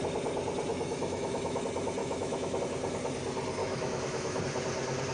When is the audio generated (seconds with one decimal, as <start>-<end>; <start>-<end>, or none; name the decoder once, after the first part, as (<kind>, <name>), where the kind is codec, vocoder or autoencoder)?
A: 0.7-1.6 (autoencoder, DAC-VAE); 2.0-2.6; 3.6-4.4